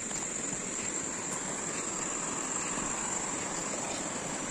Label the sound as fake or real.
real